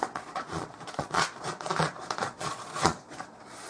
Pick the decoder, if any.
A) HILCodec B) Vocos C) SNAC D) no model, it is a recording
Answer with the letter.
B